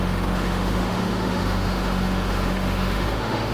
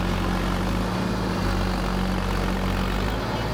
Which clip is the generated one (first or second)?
first